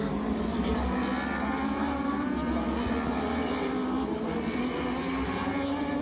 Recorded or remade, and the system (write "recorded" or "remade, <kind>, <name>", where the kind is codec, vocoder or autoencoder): recorded